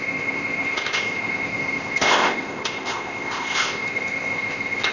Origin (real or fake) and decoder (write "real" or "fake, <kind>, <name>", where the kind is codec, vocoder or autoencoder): fake, codec, ZipCodec